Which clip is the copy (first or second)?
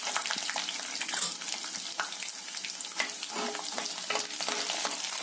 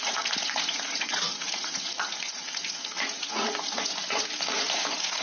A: second